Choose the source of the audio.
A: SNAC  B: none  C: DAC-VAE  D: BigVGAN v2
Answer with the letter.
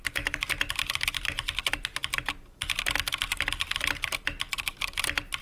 B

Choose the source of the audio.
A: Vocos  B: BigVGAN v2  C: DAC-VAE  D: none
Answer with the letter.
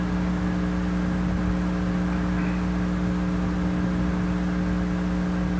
D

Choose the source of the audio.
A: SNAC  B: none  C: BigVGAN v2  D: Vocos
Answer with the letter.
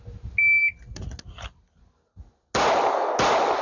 B